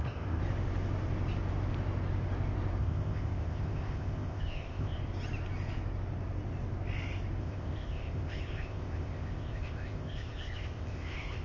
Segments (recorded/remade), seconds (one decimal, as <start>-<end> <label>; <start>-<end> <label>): 0.0-0.4 remade; 0.4-2.8 recorded; 2.8-5.0 remade; 5.0-7.4 recorded; 7.4-11.4 remade